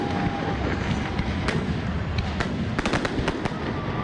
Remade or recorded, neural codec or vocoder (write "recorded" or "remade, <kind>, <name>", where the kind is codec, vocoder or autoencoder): recorded